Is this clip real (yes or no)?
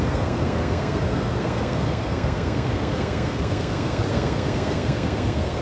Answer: no